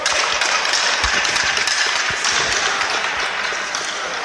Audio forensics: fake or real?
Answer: real